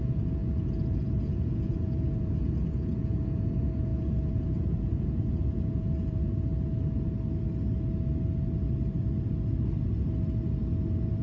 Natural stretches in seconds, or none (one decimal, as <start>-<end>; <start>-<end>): 6.5-11.2

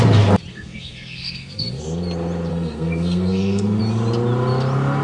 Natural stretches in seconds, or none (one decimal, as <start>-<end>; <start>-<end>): 0.0-0.5; 1.8-2.5; 3.8-5.0

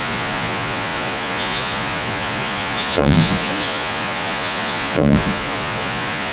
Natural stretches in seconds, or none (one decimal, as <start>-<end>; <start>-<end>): none